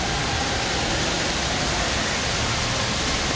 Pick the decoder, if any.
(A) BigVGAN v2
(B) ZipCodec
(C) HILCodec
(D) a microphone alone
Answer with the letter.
D